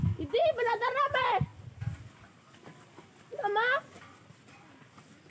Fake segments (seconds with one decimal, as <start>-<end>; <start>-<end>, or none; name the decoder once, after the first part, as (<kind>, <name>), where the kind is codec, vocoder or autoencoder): none